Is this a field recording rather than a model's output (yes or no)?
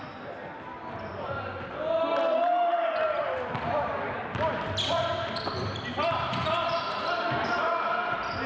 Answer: yes